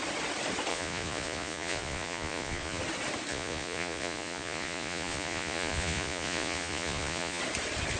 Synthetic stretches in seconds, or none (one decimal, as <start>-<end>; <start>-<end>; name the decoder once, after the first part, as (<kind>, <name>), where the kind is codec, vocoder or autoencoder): 0.7-2.8 (vocoder, Vocos); 3.3-7.4